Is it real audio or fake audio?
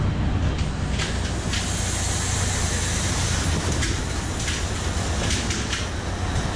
real